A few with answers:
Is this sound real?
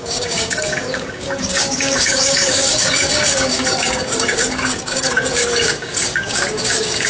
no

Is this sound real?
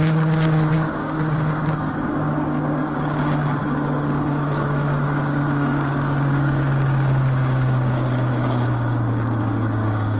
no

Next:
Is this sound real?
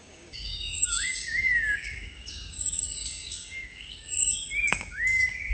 no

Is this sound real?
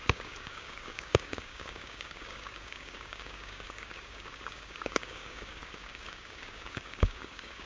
no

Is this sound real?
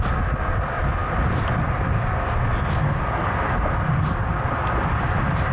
yes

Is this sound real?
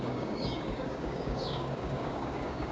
no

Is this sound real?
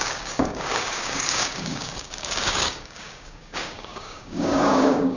no